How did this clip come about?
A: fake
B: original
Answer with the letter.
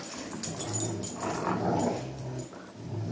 B